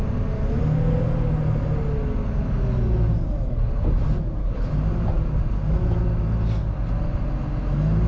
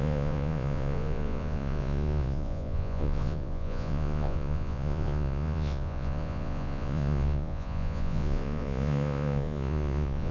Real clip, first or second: first